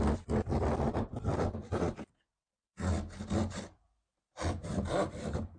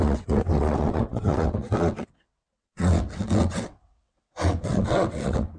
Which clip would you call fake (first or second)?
second